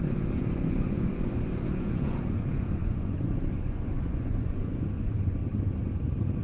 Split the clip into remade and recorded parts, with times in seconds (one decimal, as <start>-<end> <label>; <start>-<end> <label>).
0.0-5.4 remade; 5.4-6.4 recorded